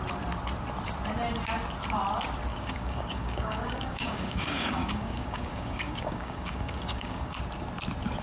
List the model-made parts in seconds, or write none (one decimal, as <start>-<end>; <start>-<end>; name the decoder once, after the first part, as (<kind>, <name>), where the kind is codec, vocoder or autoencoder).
2.5-7.4 (codec, DAC)